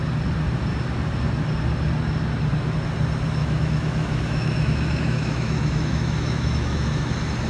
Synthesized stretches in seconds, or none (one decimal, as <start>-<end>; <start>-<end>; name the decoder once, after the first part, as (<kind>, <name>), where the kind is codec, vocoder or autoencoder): 3.4-7.1 (autoencoder, DAC-VAE)